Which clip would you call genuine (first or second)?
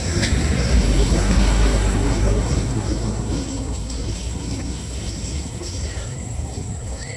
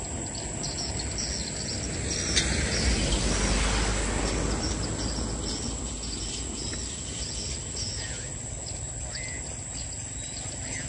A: second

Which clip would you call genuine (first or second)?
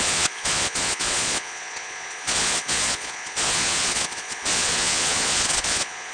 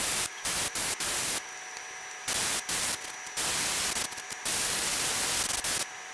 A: second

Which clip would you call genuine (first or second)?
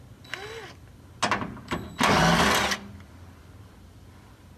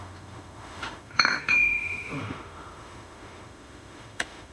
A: first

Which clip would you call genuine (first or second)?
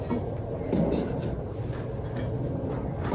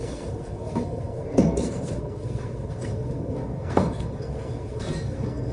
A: first